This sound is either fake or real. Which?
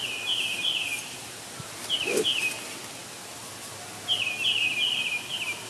real